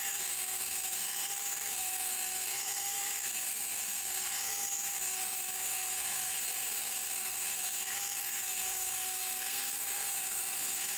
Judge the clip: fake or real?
fake